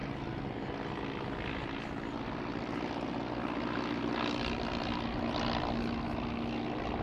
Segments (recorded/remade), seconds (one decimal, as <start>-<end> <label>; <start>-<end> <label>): 0.0-7.0 recorded